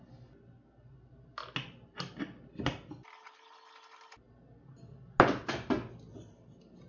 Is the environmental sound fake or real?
real